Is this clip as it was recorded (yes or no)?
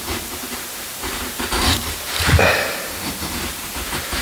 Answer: no